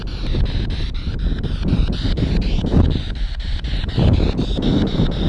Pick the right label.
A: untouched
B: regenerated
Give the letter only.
A